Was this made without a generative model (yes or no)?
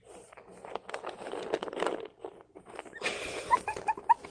yes